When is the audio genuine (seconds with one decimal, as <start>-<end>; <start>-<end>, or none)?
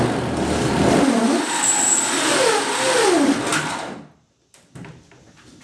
0.0-5.6